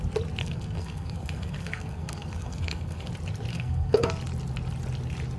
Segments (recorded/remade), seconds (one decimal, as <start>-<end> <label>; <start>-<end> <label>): 0.0-0.4 recorded; 0.4-3.1 remade; 3.1-3.5 recorded; 3.5-4.1 remade; 4.1-5.4 recorded